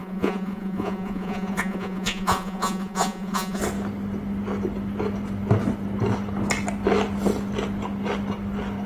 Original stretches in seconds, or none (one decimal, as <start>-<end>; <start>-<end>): 3.6-8.9